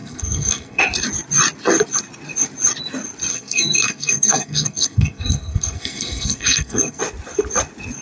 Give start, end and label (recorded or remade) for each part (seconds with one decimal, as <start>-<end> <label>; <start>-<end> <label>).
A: 0.0-0.8 remade; 0.8-3.3 recorded; 3.3-7.0 remade; 7.0-8.0 recorded